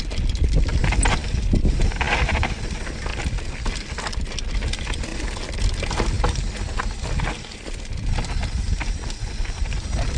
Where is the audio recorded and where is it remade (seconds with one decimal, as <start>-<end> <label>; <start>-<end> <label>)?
0.0-10.2 recorded